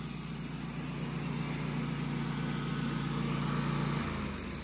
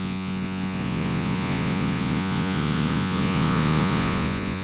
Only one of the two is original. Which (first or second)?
first